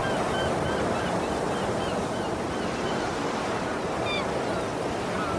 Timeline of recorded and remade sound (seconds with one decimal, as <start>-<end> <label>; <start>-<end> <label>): 0.0-5.4 recorded